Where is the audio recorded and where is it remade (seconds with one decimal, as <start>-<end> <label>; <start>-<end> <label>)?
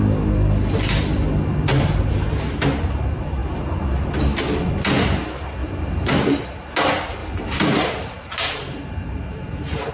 0.0-5.6 recorded; 5.6-6.1 remade; 6.1-7.2 recorded; 7.2-9.9 remade